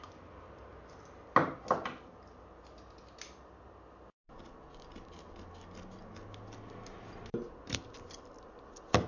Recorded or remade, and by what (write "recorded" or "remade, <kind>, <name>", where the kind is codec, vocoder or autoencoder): recorded